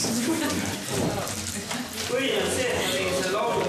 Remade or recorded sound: recorded